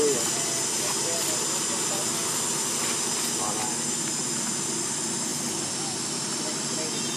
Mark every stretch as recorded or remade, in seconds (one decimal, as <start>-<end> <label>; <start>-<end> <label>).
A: 0.0-7.2 recorded